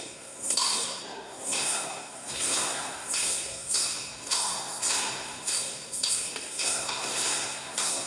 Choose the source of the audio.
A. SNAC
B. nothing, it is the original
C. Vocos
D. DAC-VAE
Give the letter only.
A